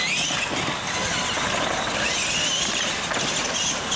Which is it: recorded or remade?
recorded